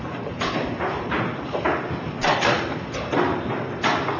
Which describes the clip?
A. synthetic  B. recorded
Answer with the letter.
B